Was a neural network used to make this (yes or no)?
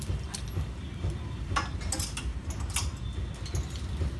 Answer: no